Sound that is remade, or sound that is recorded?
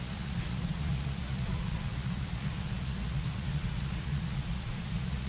remade